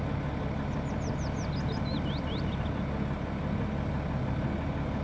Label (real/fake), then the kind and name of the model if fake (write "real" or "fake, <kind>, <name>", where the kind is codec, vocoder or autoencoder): real